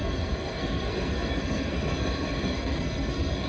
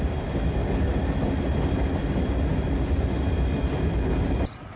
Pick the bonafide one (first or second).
second